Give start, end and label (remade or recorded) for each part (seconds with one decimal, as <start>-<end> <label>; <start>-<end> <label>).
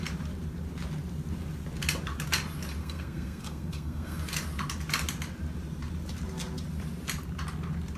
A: 0.0-2.8 recorded; 2.8-4.2 remade; 4.2-8.0 recorded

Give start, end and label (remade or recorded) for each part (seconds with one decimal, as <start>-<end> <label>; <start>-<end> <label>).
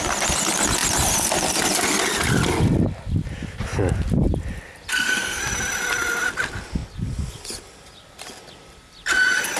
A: 0.0-4.9 recorded; 4.9-5.4 remade; 5.4-9.6 recorded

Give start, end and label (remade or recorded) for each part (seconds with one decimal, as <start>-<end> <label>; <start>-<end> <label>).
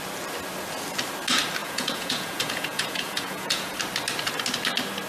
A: 0.0-1.6 recorded; 1.6-3.8 remade; 3.8-5.1 recorded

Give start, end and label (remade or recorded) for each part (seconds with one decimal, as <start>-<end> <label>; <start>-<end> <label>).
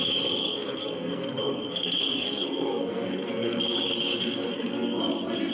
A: 0.0-0.4 recorded; 0.4-3.6 remade; 3.6-4.5 recorded; 4.5-5.0 remade; 5.0-5.5 recorded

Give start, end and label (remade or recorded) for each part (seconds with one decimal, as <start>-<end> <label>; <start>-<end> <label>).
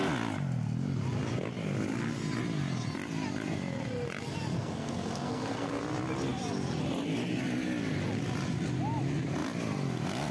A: 0.0-4.6 recorded; 4.6-5.8 remade; 5.8-10.3 recorded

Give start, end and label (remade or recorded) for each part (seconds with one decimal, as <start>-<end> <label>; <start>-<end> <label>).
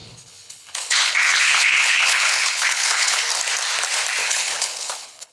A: 0.0-3.2 remade; 3.2-4.2 recorded; 4.2-5.3 remade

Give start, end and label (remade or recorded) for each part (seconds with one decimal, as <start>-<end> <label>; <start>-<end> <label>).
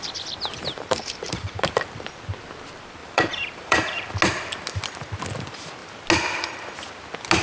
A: 0.0-0.5 recorded; 0.5-1.8 remade; 1.8-3.0 recorded; 3.0-4.1 remade; 4.1-7.4 recorded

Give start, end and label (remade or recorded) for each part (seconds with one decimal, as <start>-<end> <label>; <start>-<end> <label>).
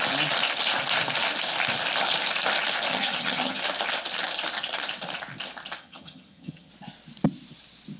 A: 0.0-2.9 recorded; 2.9-3.6 remade; 3.6-5.8 recorded; 5.8-6.7 remade; 6.7-8.0 recorded